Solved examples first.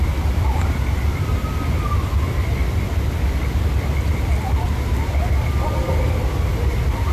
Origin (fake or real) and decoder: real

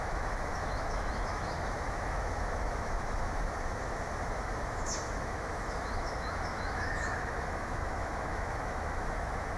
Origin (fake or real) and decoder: fake, autoencoder, DAC-VAE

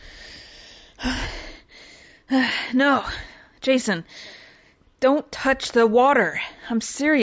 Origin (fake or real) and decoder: real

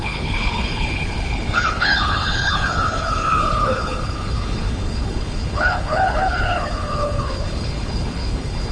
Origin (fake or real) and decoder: fake, codec, HILCodec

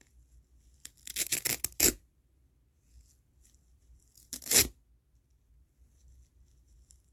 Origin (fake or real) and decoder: real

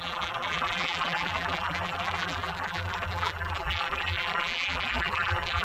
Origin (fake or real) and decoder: fake, vocoder, BigVGAN v2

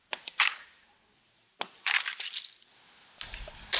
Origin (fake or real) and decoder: real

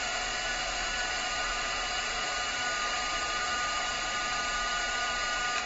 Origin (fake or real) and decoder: real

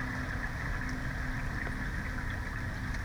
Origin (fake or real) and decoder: real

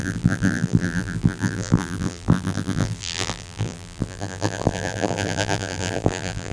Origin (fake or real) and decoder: fake, vocoder, BigVGAN v2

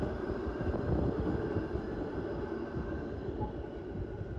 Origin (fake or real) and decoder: fake, vocoder, BigVGAN v2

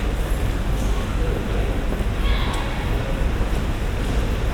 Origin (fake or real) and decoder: real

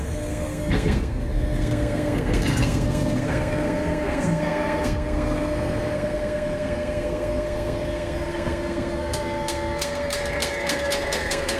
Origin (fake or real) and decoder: fake, codec, SNAC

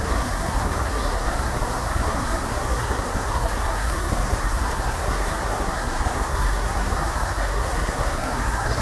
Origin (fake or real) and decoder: fake, codec, SNAC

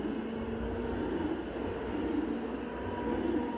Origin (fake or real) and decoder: real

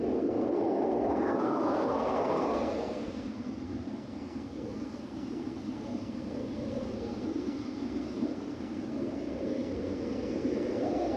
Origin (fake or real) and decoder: fake, codec, SNAC